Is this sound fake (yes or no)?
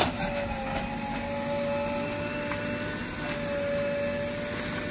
no